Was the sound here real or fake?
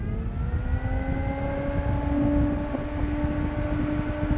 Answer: real